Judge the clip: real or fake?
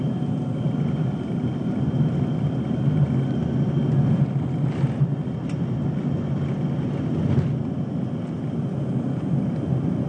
real